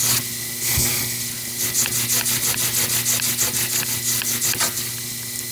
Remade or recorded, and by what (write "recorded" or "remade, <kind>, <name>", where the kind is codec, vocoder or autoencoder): recorded